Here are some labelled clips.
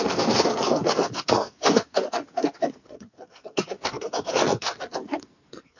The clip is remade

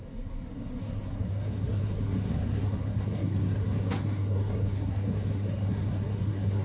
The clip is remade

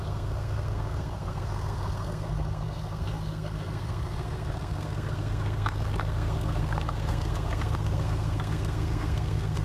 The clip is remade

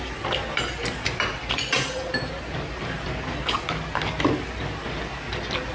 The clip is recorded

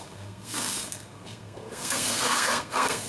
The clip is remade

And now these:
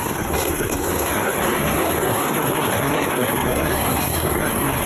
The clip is remade